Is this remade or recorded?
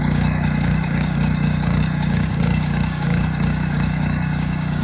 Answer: remade